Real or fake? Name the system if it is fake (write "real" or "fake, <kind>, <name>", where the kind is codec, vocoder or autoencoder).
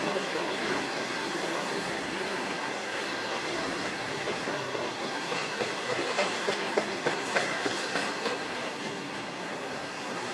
fake, codec, SNAC